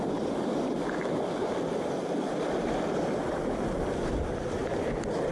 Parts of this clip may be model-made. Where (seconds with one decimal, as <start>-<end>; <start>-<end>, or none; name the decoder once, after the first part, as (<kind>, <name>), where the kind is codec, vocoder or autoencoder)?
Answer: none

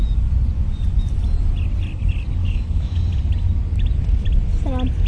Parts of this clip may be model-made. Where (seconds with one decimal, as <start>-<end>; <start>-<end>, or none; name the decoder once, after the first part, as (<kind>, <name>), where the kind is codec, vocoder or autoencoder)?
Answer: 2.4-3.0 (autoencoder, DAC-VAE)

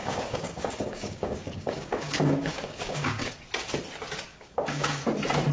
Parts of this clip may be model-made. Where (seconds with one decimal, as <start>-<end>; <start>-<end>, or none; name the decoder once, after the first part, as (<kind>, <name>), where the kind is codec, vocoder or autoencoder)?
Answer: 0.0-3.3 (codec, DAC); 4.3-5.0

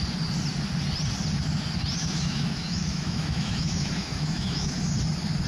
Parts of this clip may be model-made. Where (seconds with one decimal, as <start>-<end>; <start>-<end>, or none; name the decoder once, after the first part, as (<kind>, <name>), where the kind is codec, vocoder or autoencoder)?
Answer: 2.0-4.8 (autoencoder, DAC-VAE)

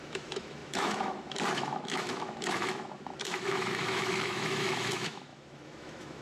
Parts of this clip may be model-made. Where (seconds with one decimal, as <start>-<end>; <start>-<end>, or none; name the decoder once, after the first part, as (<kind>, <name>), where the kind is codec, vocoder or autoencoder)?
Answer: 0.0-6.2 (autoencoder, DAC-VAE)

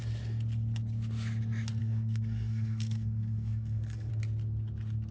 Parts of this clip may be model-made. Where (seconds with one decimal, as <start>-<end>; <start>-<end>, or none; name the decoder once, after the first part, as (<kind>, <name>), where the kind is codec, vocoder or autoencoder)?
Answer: 1.8-4.1 (codec, SNAC)

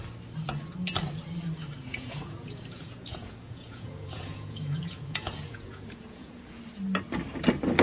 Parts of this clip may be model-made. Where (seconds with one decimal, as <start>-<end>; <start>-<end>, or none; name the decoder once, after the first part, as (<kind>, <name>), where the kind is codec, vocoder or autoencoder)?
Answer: 1.9-6.6 (vocoder, Vocos)